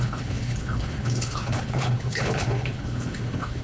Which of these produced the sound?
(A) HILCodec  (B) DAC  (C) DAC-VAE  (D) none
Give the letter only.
A